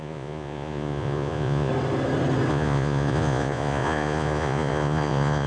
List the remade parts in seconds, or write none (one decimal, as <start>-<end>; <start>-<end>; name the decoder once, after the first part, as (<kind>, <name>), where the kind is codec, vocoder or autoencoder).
0.0-1.7 (vocoder, Vocos); 2.5-5.5